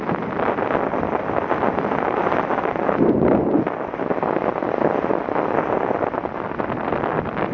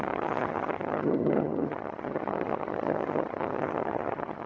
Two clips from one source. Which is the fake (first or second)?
second